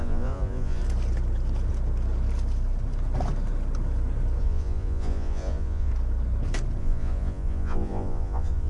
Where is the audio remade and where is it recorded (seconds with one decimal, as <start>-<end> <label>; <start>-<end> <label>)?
0.0-0.8 remade; 0.8-4.4 recorded; 4.4-5.9 remade; 5.9-6.8 recorded; 6.8-8.7 remade